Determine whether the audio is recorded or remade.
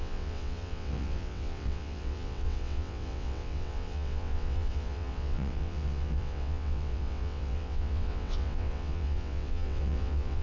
remade